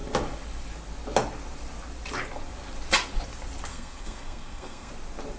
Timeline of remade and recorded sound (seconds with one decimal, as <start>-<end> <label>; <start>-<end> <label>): 0.0-3.7 recorded; 3.7-4.9 remade; 4.9-5.4 recorded